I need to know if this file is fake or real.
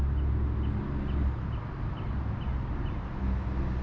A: real